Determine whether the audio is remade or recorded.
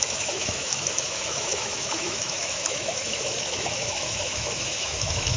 remade